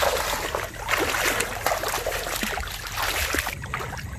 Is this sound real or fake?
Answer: real